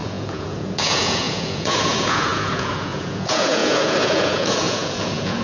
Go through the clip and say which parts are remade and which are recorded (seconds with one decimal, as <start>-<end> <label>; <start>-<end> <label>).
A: 0.0-5.4 remade